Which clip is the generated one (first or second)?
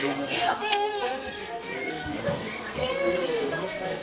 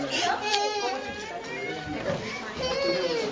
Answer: first